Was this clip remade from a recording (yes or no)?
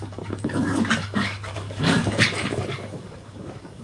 yes